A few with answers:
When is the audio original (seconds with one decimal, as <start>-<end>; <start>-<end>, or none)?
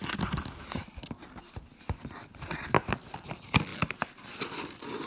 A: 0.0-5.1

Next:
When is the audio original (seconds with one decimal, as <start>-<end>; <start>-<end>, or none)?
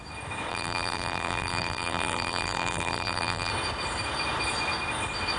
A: 0.0-0.5; 3.5-5.4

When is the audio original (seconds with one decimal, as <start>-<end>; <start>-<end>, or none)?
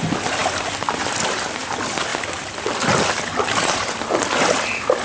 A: 0.0-2.1; 2.7-5.0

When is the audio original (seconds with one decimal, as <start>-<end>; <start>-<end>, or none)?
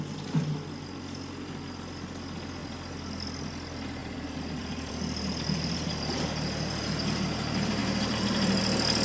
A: 0.0-2.6; 3.4-4.0; 5.9-7.8; 8.6-9.0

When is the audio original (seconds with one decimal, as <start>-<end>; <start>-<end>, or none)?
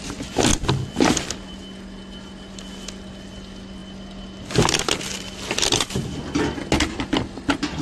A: 0.0-6.0; 6.6-7.8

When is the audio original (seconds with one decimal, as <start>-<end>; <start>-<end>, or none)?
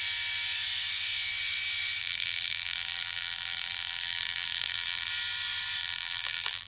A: 0.0-2.0; 5.1-5.8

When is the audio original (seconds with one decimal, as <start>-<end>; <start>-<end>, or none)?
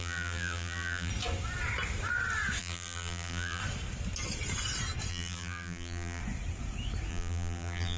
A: 1.1-2.6; 3.6-5.1; 6.2-7.1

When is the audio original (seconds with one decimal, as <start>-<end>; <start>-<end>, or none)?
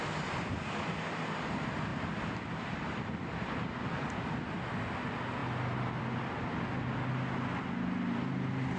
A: 0.0-1.9; 4.1-8.8